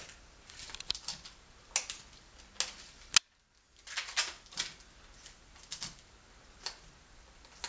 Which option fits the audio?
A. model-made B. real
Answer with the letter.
B